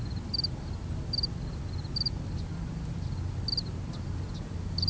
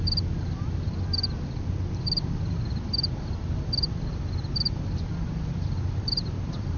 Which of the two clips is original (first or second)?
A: first